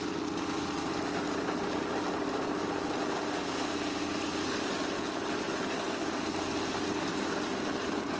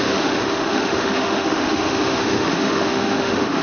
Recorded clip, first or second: first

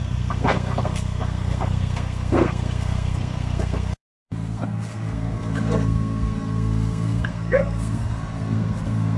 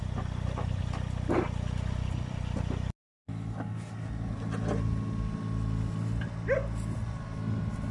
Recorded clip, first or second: second